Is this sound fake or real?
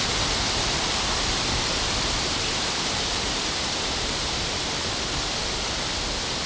real